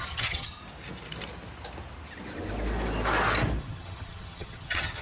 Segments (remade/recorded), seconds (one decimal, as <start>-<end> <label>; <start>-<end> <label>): 0.0-0.6 remade; 0.6-3.6 recorded; 3.6-5.0 remade